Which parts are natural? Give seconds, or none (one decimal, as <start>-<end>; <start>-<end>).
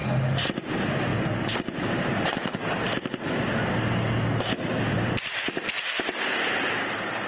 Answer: 1.1-1.7; 2.8-4.8